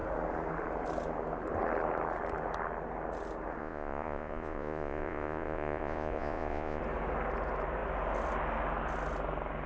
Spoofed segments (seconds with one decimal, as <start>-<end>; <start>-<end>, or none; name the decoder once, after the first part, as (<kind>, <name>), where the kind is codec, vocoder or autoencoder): 3.6-6.8 (vocoder, Vocos)